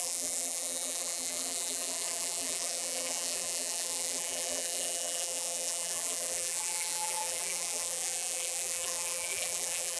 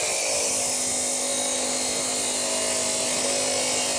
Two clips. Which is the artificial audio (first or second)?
first